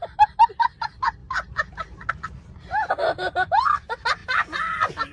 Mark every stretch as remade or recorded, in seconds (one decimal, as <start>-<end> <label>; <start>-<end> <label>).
0.0-5.1 recorded